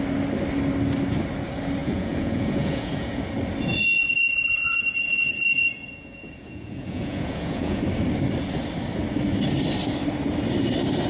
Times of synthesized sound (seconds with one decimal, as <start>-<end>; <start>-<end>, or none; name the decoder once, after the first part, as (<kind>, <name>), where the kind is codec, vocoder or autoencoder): 1.8-3.2 (vocoder, Vocos); 3.7-7.8